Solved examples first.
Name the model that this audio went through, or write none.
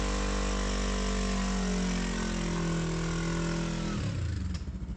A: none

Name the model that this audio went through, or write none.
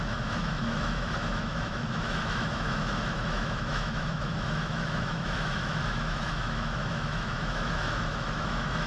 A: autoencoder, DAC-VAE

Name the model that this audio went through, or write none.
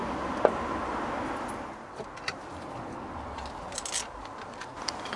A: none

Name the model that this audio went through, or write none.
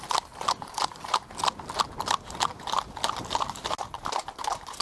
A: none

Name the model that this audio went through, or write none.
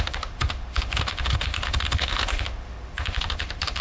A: autoencoder, DAC-VAE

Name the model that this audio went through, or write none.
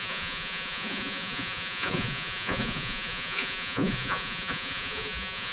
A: vocoder, Vocos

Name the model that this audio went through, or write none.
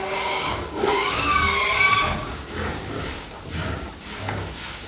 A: codec, DAC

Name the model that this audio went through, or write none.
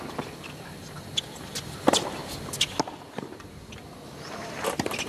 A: none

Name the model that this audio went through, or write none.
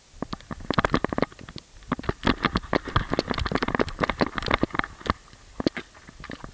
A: none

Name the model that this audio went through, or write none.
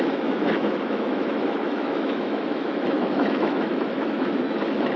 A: autoencoder, DAC-VAE